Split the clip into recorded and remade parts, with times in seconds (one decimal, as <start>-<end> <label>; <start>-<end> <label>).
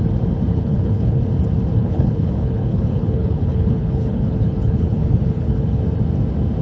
0.0-0.5 recorded; 0.5-1.2 remade; 1.2-1.8 recorded; 1.8-5.8 remade; 5.8-6.6 recorded